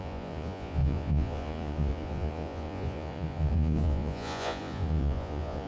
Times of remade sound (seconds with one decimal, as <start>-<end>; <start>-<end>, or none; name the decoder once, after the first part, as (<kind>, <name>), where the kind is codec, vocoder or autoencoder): 0.0-5.7 (vocoder, Vocos)